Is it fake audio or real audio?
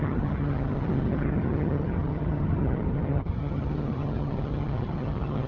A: fake